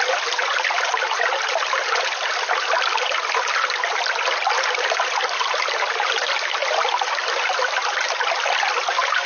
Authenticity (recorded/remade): recorded